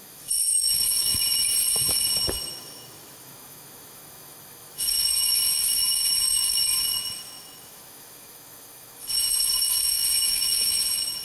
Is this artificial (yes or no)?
yes